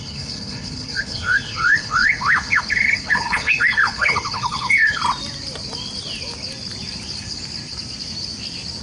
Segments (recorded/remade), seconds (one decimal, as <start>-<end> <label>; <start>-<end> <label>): 0.0-5.0 remade; 5.0-8.8 recorded